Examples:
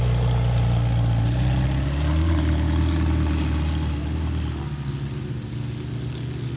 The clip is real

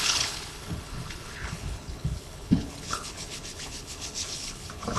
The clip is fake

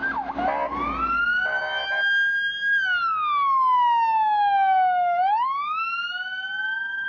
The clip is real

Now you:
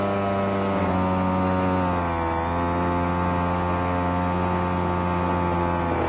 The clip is real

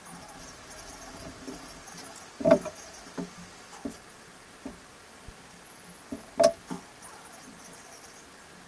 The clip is real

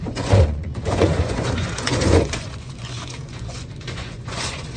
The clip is fake